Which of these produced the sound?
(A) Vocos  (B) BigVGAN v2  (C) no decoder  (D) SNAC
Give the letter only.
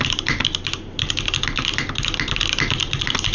C